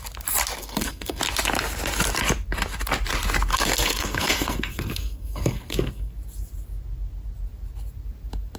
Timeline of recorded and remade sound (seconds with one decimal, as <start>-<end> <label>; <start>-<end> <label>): 0.0-0.6 recorded; 0.6-1.2 remade; 1.2-3.5 recorded; 3.5-6.1 remade; 6.1-8.6 recorded